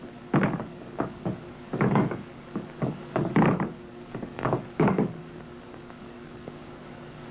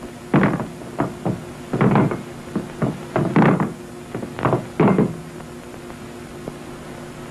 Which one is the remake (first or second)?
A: first